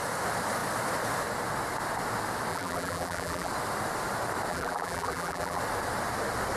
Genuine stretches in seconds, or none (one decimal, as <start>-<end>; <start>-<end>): 0.0-2.5; 3.5-4.5; 5.6-6.6